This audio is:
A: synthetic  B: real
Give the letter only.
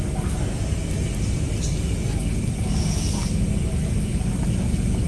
B